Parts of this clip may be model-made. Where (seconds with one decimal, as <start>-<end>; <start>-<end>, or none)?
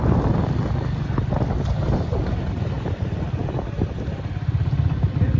none